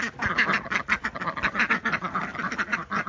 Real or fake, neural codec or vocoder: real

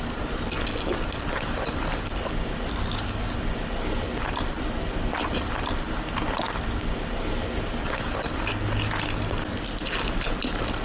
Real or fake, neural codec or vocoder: real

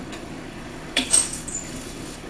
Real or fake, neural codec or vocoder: fake, codec, DAC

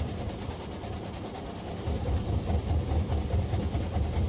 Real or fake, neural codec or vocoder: real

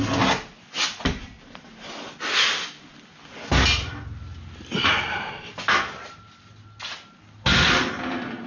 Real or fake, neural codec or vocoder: real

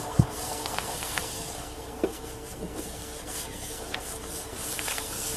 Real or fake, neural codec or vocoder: fake, codec, SNAC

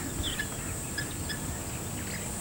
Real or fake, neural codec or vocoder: real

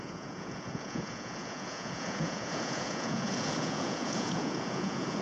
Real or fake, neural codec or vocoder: fake, vocoder, Vocos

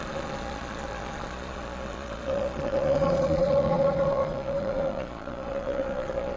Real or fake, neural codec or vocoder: fake, vocoder, Vocos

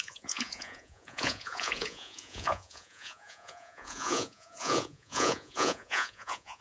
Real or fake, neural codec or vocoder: fake, vocoder, Vocos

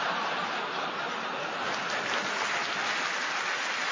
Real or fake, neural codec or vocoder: real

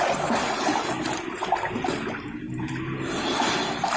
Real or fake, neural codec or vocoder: real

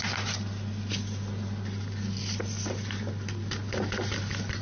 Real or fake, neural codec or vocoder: real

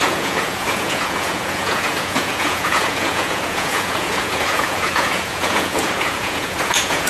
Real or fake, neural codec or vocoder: fake, vocoder, Vocos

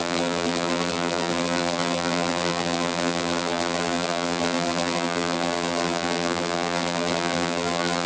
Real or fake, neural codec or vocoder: fake, vocoder, BigVGAN v2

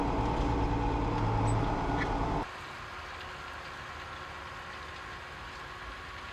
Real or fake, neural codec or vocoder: real